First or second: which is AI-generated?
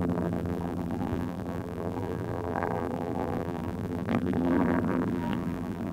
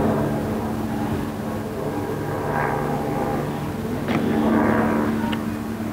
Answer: first